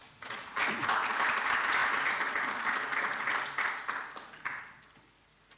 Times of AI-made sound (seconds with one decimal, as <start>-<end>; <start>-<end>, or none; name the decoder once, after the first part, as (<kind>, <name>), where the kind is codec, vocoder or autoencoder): 0.0-0.6 (vocoder, Vocos)